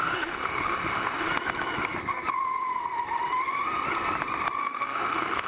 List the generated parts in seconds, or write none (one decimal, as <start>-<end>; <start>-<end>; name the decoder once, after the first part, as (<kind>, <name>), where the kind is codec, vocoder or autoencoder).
0.0-1.3 (autoencoder, DAC-VAE); 4.6-5.5